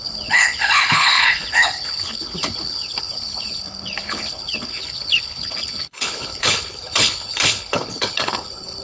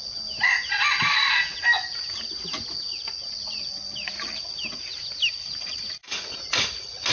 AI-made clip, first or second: first